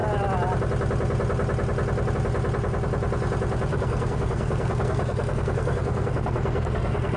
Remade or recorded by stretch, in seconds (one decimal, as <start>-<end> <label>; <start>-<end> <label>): 0.0-3.7 recorded; 3.7-7.2 remade